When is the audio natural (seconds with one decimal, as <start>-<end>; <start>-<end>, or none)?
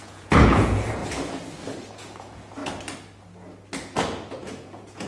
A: 1.0-1.8; 2.6-4.3